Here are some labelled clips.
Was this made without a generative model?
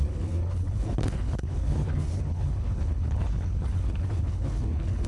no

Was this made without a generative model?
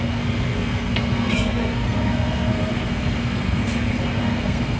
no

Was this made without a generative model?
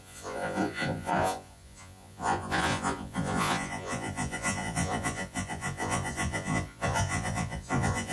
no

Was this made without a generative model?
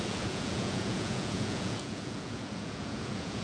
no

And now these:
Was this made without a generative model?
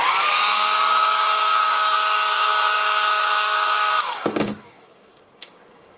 no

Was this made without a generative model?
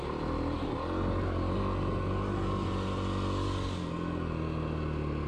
yes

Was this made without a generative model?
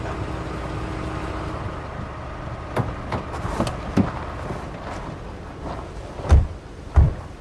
yes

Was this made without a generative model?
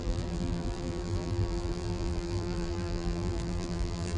no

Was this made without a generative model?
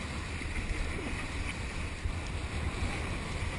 yes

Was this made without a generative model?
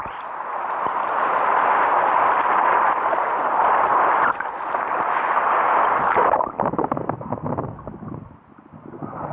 no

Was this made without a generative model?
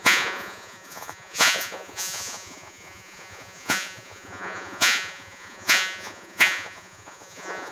no